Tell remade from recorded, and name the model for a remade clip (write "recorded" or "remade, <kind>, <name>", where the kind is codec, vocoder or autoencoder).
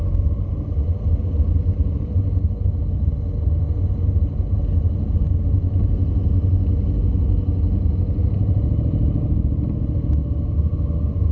recorded